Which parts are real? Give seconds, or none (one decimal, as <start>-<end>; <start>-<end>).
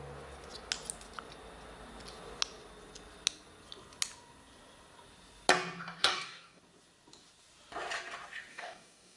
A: 0.0-6.0; 6.6-8.5